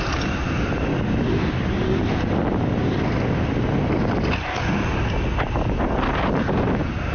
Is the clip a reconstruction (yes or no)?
no